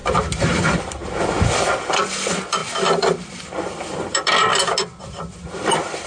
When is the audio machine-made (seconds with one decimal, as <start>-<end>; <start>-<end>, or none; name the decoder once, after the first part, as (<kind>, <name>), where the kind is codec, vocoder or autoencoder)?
0.6-1.0 (vocoder, BigVGAN v2); 1.6-2.6; 3.3-4.5; 5.0-6.1

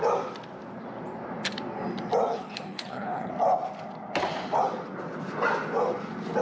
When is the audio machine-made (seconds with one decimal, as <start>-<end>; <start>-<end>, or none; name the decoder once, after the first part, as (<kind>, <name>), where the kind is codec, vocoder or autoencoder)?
2.3-3.3 (codec, HILCodec)

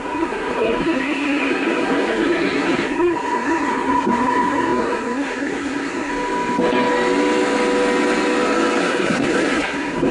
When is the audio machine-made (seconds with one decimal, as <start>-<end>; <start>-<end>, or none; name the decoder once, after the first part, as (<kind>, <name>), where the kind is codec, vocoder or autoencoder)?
0.0-6.1 (codec, SNAC); 8.8-10.1

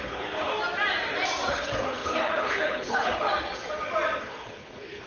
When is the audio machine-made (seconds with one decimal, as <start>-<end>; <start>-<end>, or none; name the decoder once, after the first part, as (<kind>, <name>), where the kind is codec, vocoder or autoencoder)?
0.0-0.5 (codec, HILCodec); 1.5-3.3; 4.2-5.1

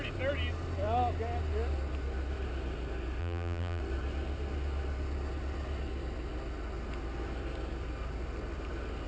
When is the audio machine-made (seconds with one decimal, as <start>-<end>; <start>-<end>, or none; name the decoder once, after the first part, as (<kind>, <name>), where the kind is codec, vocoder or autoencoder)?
3.2-3.8 (vocoder, BigVGAN v2)

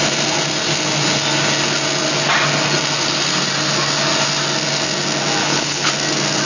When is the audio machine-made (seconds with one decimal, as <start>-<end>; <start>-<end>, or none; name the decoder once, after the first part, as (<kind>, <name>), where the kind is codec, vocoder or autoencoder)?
5.4-5.9 (codec, HILCodec)

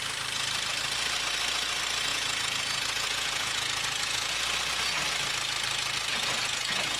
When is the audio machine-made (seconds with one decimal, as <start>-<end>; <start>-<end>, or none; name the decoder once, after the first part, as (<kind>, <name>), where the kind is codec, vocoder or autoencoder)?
2.1-4.4 (vocoder, Vocos); 6.1-7.0

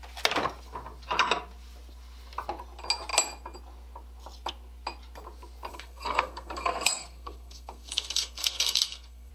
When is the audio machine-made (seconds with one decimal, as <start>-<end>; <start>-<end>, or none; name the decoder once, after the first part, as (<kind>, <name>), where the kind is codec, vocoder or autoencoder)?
5.7-9.3 (codec, SNAC)